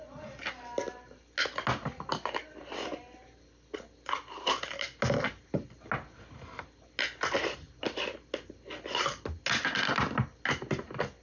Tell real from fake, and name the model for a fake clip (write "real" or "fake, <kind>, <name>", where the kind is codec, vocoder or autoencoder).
real